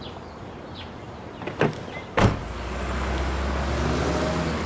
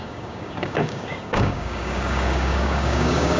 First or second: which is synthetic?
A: second